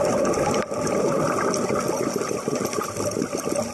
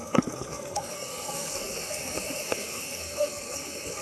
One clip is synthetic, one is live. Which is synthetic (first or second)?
second